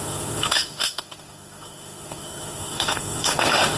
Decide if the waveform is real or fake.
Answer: fake